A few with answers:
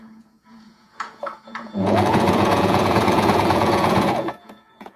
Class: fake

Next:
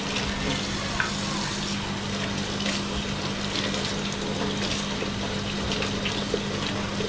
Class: real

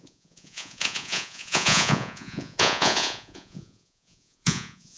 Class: fake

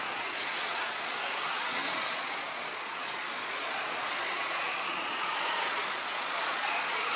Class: fake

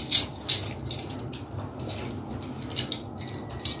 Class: real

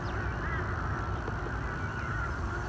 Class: real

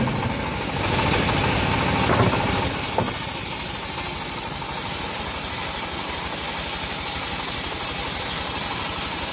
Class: real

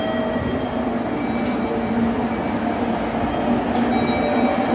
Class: real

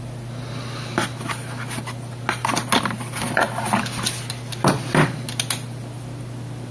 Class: real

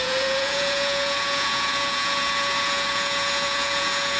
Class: fake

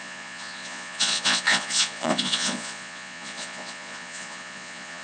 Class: fake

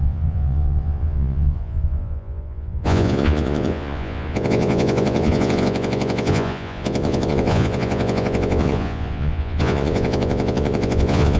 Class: fake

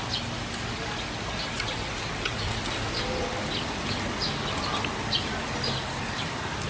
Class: real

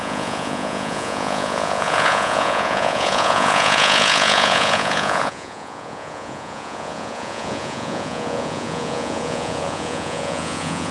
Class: fake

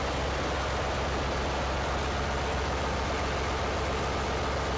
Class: real